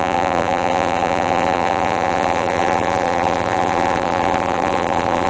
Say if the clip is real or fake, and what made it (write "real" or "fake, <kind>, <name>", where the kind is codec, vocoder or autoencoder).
fake, vocoder, BigVGAN v2